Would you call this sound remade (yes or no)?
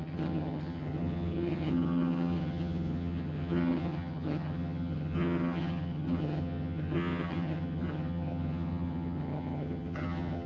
yes